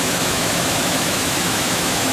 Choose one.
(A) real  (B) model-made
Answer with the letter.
B